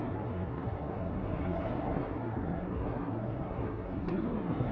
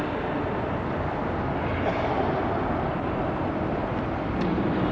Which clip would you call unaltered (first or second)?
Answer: second